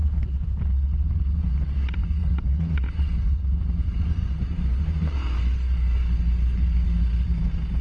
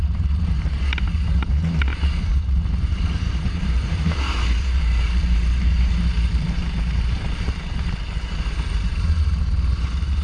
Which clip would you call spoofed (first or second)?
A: second